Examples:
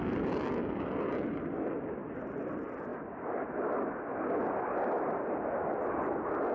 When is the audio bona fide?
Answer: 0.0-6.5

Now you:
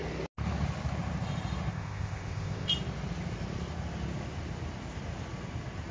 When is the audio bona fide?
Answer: 0.0-1.7; 2.7-5.9

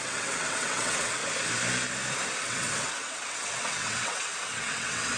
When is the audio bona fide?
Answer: 1.2-2.4

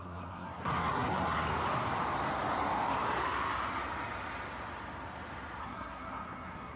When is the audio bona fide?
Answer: 1.5-5.6

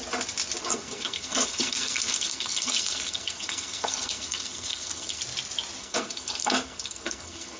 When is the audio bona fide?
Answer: 0.0-0.6; 5.2-5.8

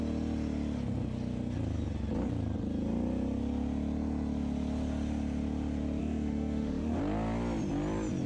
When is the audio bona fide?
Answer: 0.0-6.0; 7.0-8.3